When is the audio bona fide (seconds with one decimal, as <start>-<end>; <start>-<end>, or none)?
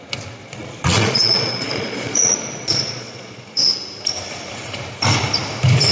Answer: 0.0-0.4; 3.7-5.9